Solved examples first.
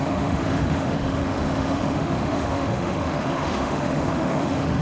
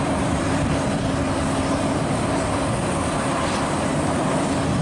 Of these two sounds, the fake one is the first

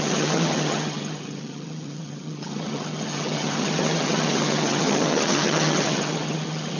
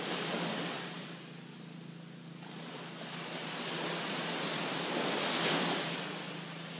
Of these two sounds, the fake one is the first